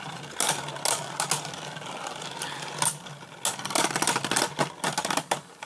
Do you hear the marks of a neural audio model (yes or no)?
no